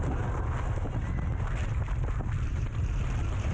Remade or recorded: recorded